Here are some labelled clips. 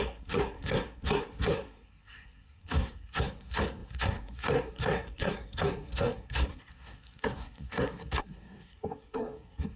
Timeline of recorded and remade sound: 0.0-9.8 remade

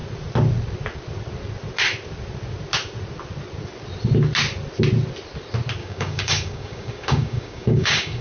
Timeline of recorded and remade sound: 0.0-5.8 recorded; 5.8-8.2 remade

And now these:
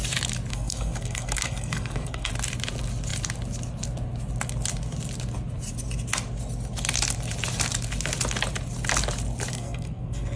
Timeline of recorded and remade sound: 0.0-0.5 recorded; 0.5-2.3 remade; 2.3-9.5 recorded; 9.5-10.4 remade